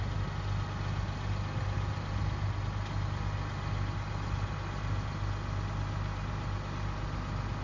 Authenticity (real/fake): real